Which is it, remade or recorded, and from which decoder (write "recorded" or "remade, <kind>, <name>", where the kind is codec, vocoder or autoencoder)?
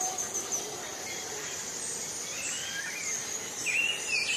recorded